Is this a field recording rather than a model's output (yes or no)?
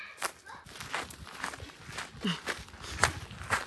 yes